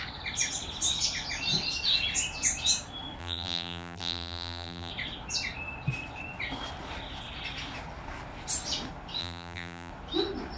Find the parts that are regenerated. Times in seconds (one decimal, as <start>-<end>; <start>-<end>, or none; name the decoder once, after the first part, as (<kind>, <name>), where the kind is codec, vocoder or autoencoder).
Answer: 3.2-4.9 (vocoder, BigVGAN v2); 9.2-9.9